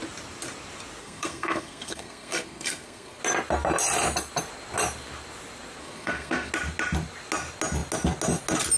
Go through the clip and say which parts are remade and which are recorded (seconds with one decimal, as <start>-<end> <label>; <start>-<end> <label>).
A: 0.0-1.0 recorded; 1.0-3.2 remade; 3.2-5.8 recorded; 5.8-6.5 remade; 6.5-8.8 recorded